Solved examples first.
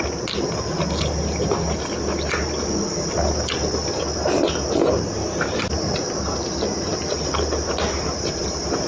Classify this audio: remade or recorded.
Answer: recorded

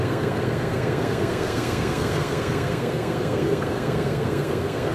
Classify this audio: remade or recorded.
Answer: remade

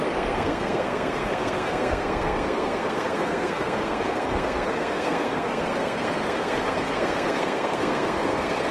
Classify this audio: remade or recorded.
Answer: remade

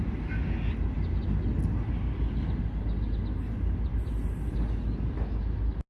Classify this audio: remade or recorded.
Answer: recorded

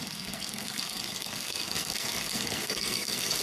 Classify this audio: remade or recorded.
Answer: remade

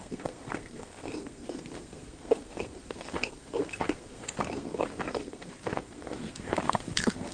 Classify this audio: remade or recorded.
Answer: remade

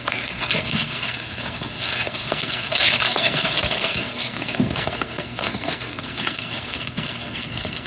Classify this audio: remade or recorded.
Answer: remade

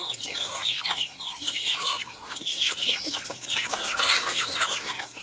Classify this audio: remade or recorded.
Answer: remade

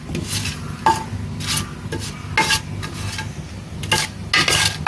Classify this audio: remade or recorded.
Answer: recorded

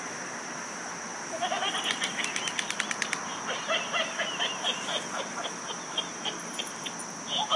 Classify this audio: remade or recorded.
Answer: recorded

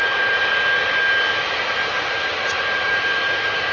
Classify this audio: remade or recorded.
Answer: recorded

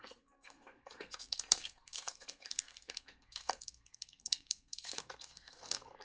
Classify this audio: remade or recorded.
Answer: remade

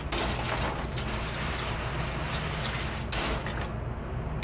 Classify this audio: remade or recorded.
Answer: recorded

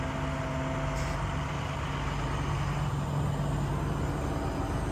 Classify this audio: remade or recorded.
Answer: recorded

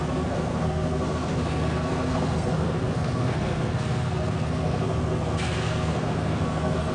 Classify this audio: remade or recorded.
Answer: remade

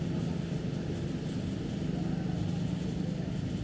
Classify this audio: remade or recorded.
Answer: recorded